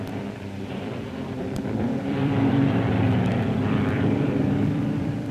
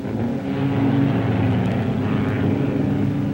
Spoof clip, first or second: first